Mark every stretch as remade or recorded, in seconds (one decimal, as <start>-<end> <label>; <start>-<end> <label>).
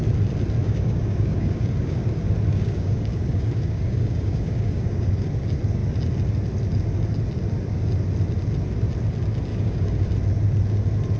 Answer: 0.0-0.6 recorded; 0.6-2.0 remade; 2.0-2.5 recorded; 2.5-5.3 remade; 5.3-9.5 recorded; 9.5-10.1 remade; 10.1-11.2 recorded